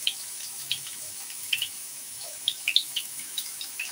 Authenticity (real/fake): fake